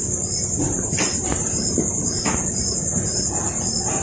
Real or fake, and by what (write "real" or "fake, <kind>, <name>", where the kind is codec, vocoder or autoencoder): real